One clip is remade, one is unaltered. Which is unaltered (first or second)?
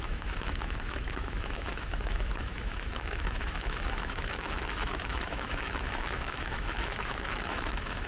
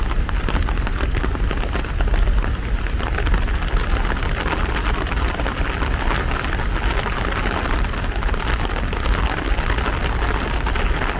second